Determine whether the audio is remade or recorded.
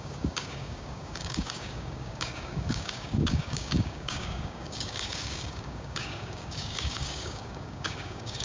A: remade